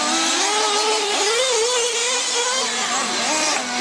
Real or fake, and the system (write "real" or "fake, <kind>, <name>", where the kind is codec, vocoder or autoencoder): real